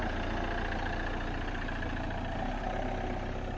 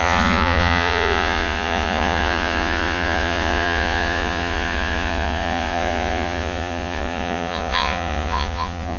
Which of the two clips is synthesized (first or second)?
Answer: second